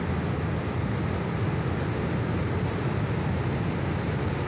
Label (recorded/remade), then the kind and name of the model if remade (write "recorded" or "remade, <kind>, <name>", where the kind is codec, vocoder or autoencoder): recorded